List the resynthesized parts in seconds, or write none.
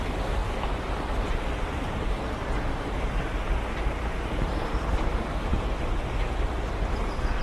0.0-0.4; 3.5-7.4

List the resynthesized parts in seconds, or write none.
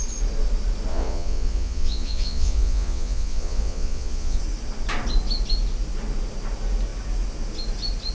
0.9-4.4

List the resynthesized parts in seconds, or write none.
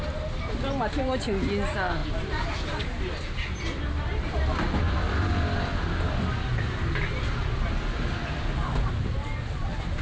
none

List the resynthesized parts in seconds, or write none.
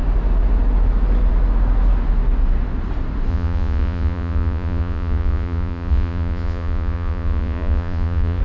3.3-8.4